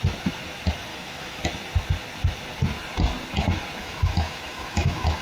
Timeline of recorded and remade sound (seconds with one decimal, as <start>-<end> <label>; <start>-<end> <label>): 0.0-0.9 recorded; 0.9-1.4 remade; 1.4-3.8 recorded; 3.8-5.2 remade